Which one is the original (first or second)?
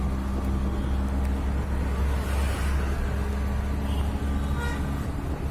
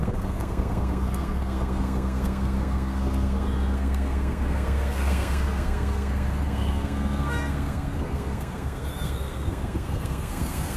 first